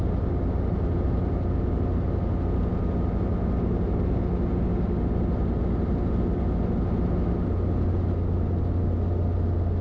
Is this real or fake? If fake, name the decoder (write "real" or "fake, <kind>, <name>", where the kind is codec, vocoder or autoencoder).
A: real